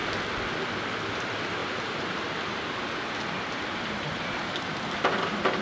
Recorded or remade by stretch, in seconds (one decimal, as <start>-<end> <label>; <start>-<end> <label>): 0.0-5.6 recorded